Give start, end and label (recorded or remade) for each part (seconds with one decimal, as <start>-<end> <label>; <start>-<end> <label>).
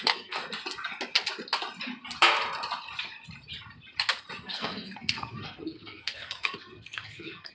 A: 0.0-0.4 remade; 0.4-4.4 recorded; 4.4-7.5 remade